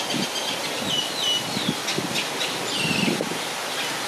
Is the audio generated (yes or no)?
no